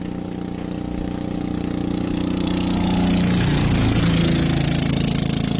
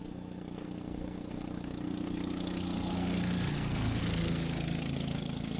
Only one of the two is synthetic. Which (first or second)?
second